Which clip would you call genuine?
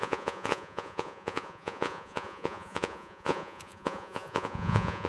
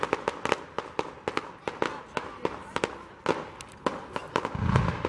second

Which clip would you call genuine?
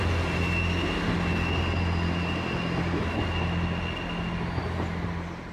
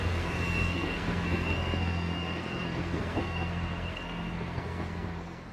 first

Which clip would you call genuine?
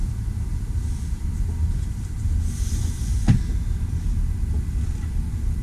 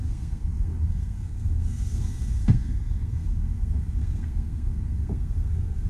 first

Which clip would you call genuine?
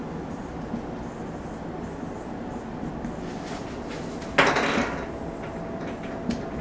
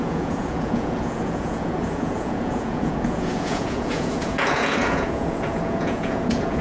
first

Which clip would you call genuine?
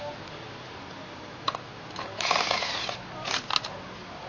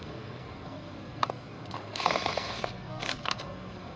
first